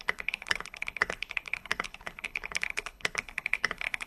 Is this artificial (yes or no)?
yes